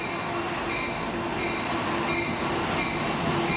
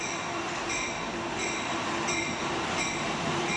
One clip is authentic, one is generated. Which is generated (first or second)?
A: second